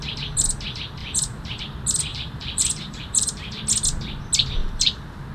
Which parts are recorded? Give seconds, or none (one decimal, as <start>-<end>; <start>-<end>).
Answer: 0.0-1.0; 1.6-2.1; 3.6-4.6